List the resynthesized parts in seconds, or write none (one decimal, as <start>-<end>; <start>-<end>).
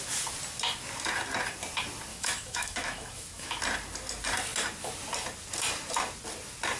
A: 2.1-3.6